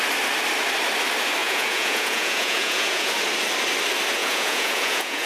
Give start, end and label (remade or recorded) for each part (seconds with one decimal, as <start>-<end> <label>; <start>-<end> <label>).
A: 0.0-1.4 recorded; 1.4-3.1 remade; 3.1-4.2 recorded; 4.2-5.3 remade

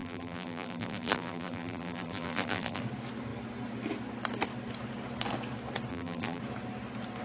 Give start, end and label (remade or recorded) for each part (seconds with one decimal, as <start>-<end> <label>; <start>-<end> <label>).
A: 0.0-2.8 remade; 2.8-5.9 recorded; 5.9-6.4 remade; 6.4-7.2 recorded

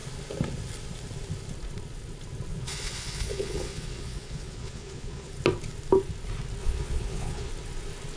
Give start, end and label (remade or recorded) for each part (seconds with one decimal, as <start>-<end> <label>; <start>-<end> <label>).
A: 0.0-2.5 recorded; 2.5-5.3 remade; 5.3-6.6 recorded; 6.6-7.5 remade; 7.5-8.2 recorded